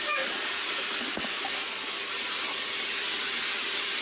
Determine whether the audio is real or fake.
real